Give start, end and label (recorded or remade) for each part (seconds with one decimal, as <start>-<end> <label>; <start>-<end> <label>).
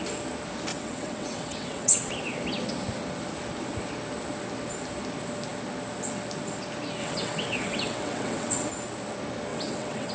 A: 0.0-0.7 recorded; 0.7-2.1 remade; 2.1-7.0 recorded; 7.0-8.7 remade; 8.7-9.5 recorded; 9.5-10.1 remade